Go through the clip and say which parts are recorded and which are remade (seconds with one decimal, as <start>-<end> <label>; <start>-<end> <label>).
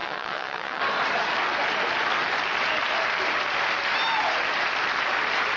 0.0-0.8 remade; 0.8-5.6 recorded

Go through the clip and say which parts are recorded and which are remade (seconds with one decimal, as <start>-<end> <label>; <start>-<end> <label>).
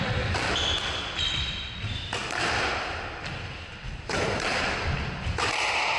0.0-6.0 recorded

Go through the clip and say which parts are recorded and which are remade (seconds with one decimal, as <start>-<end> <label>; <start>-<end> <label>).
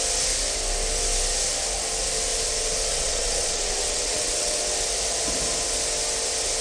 0.0-2.9 recorded; 2.9-4.6 remade; 4.6-6.6 recorded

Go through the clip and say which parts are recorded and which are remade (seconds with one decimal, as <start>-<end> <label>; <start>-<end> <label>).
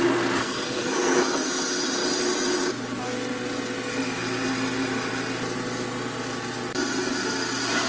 0.0-0.4 recorded; 0.4-1.5 remade; 1.5-7.9 recorded